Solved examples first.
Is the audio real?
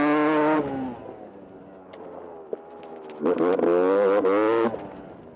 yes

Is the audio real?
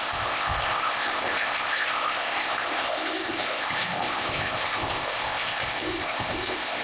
no